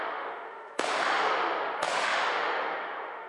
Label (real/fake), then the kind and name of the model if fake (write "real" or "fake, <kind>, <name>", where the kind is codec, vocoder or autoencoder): fake, autoencoder, DAC-VAE